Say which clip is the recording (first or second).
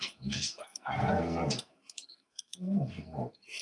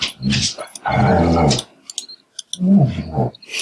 second